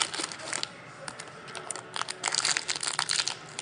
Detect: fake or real real